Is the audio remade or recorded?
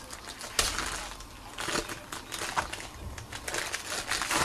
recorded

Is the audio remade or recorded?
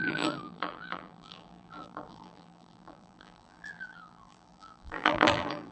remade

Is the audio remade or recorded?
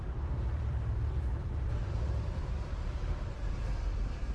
remade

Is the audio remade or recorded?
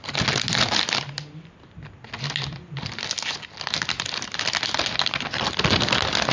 recorded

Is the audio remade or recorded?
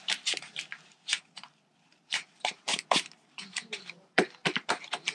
remade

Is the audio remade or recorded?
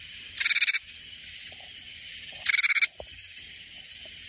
recorded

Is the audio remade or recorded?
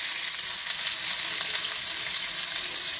recorded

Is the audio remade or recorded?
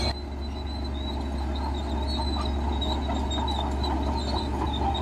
recorded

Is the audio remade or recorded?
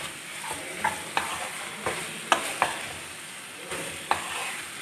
recorded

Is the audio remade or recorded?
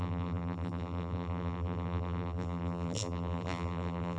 remade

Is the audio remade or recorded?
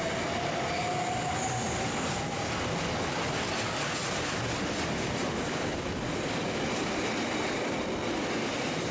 recorded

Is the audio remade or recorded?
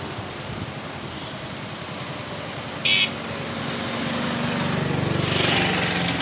recorded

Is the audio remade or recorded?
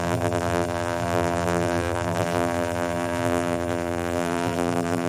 remade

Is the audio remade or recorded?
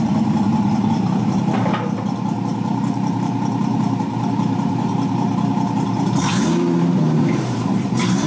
remade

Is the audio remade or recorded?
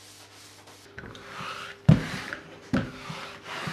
recorded